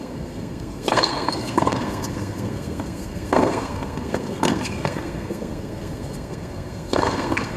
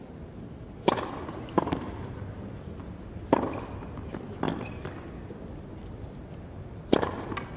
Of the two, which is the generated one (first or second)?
first